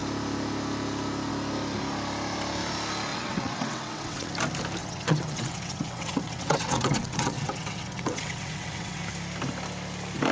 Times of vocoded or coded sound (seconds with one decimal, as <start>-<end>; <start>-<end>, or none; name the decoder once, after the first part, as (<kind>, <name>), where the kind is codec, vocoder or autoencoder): 3.1-4.3 (vocoder, WaveNeXt); 4.8-9.0

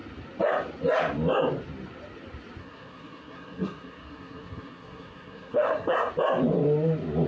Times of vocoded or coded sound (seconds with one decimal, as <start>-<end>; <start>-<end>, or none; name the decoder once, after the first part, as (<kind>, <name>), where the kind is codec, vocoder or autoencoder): 2.6-6.1 (codec, SNAC)